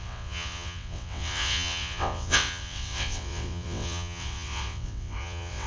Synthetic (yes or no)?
yes